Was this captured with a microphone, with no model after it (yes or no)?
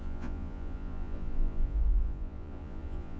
no